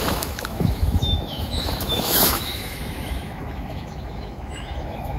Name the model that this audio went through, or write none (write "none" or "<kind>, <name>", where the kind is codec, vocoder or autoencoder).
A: autoencoder, DAC-VAE